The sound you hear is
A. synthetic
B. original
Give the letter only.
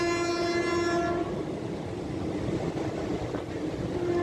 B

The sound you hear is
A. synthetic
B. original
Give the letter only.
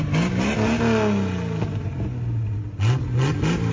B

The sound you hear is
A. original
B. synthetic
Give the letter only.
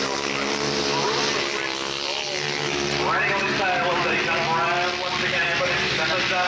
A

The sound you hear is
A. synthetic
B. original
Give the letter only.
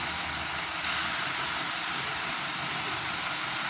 B